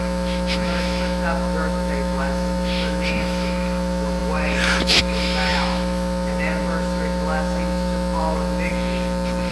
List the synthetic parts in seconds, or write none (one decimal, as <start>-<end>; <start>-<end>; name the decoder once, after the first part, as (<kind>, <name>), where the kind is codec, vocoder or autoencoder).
0.0-8.7 (autoencoder, DAC-VAE)